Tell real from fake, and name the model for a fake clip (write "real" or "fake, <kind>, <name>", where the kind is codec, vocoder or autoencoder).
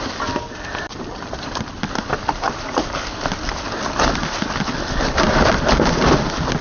real